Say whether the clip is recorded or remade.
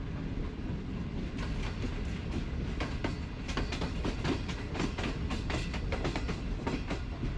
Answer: recorded